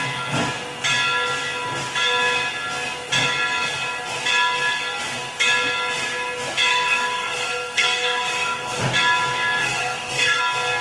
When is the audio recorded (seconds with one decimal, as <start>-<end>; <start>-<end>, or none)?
0.0-6.7; 8.8-9.6; 10.4-10.8